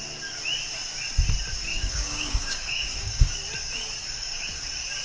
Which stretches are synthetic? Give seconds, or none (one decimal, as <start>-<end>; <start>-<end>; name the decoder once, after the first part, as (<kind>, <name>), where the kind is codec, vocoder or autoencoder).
1.7-3.3 (codec, DAC); 4.0-4.6